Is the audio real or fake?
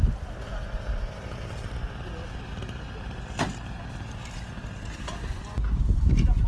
real